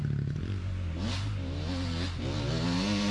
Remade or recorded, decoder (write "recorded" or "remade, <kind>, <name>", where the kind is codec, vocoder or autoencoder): recorded